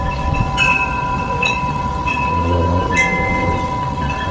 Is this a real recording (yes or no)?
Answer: no